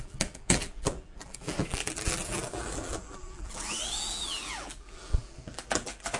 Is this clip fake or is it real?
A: fake